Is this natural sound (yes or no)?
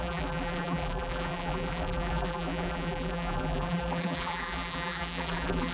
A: no